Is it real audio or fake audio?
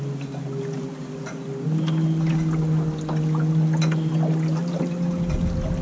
real